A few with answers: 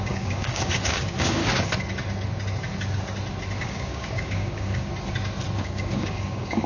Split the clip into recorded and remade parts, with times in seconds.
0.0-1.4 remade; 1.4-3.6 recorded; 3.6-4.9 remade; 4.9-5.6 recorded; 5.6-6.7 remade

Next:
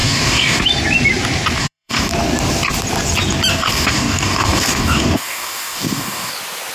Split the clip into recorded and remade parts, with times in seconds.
0.0-0.6 remade; 0.6-1.6 recorded; 1.6-2.1 remade; 2.1-3.5 recorded; 3.5-6.3 remade; 6.3-6.7 recorded

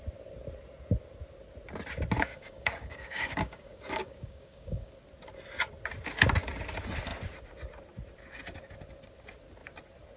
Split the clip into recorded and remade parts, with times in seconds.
0.0-2.3 recorded; 2.3-4.9 remade; 4.9-10.2 recorded

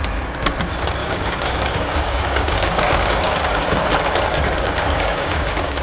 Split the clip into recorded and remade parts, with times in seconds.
0.0-1.0 recorded; 1.0-3.9 remade; 3.9-4.3 recorded; 4.3-5.8 remade

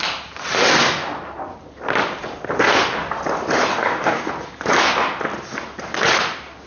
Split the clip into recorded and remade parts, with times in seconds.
0.0-3.7 recorded; 3.7-4.3 remade; 4.3-6.7 recorded

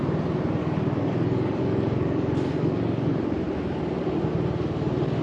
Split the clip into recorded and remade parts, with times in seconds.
0.0-0.6 recorded; 0.6-3.2 remade; 3.2-5.2 recorded

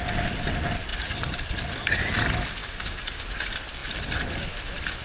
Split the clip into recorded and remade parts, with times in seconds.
0.0-2.6 recorded; 2.6-3.2 remade; 3.2-5.0 recorded

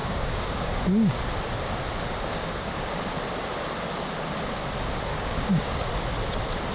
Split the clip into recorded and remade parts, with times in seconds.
0.0-1.2 remade; 1.2-2.3 recorded; 2.3-2.9 remade; 2.9-5.1 recorded; 5.1-5.9 remade; 5.9-6.7 recorded